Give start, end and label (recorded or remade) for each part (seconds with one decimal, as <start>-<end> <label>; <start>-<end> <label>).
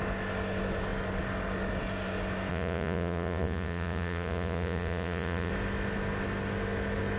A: 0.0-2.5 recorded; 2.5-5.5 remade; 5.5-7.2 recorded